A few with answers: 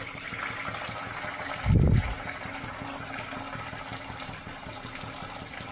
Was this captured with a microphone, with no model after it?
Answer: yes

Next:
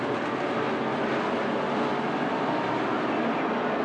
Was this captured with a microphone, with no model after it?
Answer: yes